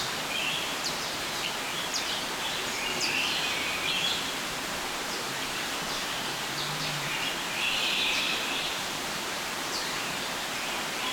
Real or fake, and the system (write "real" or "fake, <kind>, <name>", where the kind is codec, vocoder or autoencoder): fake, vocoder, BigVGAN v2